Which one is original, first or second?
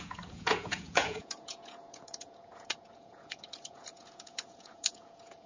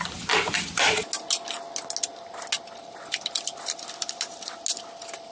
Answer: second